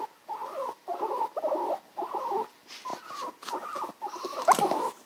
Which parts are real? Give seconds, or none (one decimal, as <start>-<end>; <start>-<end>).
0.0-5.1